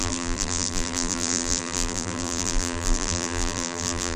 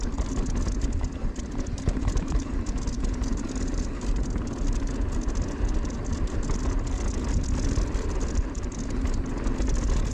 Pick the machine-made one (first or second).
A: first